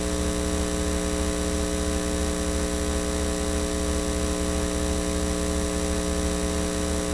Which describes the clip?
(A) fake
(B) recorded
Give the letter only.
B